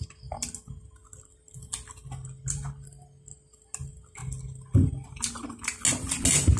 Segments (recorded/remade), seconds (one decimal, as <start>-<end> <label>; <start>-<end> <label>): 0.0-6.6 recorded